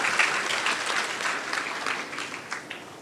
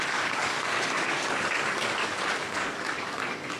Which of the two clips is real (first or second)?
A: first